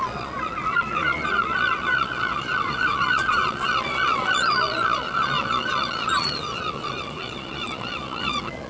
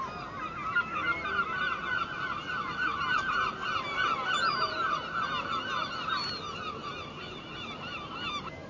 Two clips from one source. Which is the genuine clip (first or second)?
second